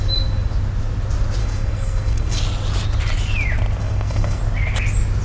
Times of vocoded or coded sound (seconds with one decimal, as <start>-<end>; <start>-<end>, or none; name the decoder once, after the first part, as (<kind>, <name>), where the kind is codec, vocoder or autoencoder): 1.4-2.4 (codec, SNAC); 3.8-4.4